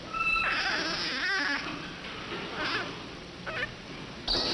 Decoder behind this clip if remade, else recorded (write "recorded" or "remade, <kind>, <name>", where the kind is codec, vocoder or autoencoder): recorded